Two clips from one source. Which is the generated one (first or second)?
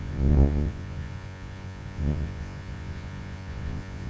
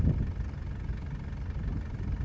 first